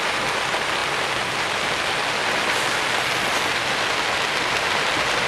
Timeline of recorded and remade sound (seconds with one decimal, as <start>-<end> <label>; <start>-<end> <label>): 0.0-5.3 recorded

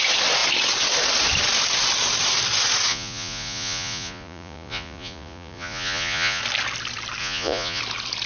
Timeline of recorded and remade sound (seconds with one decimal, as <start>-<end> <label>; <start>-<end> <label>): 0.0-2.9 recorded; 2.9-6.4 remade; 6.4-7.2 recorded; 7.2-7.8 remade; 7.8-8.3 recorded

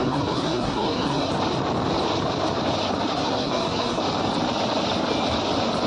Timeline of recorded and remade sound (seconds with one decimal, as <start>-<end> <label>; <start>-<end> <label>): 0.0-1.3 remade; 1.3-3.1 recorded; 3.1-4.0 remade; 4.0-5.9 recorded

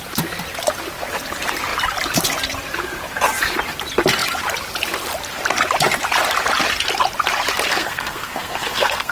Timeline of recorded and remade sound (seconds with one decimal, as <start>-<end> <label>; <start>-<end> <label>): 0.0-7.7 recorded; 7.7-9.1 remade

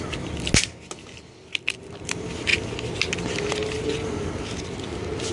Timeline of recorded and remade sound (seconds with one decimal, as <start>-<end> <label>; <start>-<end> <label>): 0.0-5.3 recorded

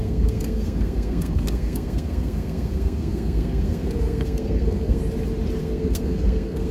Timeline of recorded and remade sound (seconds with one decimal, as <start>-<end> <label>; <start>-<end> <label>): 0.0-5.0 remade; 5.0-5.6 recorded; 5.6-6.7 remade